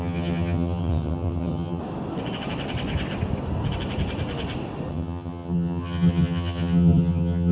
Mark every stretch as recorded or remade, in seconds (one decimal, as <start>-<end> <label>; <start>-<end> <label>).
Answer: 0.0-1.8 remade; 1.8-4.9 recorded; 4.9-7.5 remade